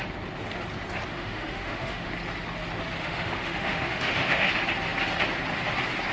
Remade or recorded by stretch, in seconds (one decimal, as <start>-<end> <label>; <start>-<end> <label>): 0.0-1.1 recorded; 1.1-2.1 remade; 2.1-3.0 recorded; 3.0-4.5 remade; 4.5-6.1 recorded